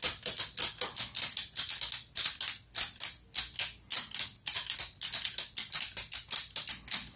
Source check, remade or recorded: recorded